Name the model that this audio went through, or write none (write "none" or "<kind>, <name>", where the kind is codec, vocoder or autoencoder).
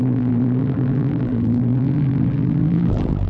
vocoder, BigVGAN v2